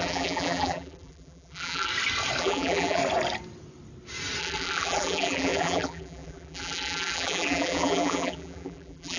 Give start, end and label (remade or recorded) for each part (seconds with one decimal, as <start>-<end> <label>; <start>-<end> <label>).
0.0-1.9 remade; 1.9-2.4 recorded; 2.4-3.0 remade; 3.0-4.4 recorded; 4.4-9.2 remade